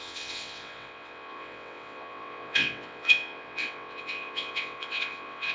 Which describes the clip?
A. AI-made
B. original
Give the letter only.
A